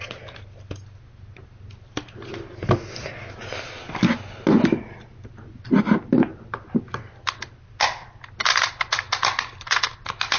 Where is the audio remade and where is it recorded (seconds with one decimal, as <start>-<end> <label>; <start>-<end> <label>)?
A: 0.0-10.4 recorded